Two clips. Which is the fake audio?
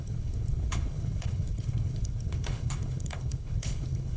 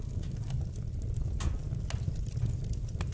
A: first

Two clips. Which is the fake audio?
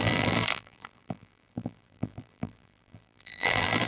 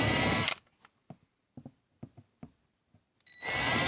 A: first